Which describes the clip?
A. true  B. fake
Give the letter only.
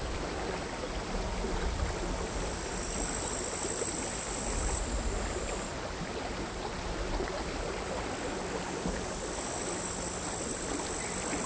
A